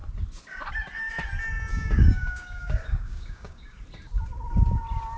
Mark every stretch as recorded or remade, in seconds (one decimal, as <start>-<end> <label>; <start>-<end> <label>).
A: 0.0-1.7 recorded; 1.7-3.8 remade; 3.8-5.2 recorded